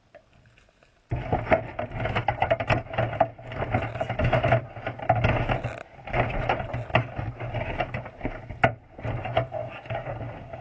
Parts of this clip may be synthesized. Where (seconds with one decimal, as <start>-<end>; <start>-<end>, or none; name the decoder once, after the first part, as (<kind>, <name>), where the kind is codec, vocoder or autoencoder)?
9.6-10.6 (codec, DAC)